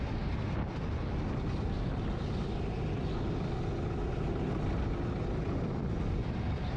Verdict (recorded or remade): recorded